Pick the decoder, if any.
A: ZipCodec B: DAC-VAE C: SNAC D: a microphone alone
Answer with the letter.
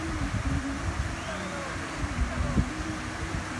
D